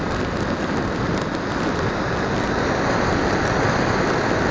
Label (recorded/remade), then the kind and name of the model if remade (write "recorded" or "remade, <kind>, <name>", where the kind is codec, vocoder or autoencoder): recorded